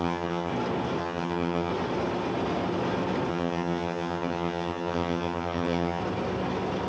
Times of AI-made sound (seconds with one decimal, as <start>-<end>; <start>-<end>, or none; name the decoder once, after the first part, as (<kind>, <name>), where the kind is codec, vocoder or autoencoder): 0.0-0.5 (vocoder, HiFi-GAN); 1.0-1.7; 3.3-6.0